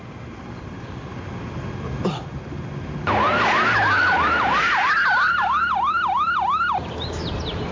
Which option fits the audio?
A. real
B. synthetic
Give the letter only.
A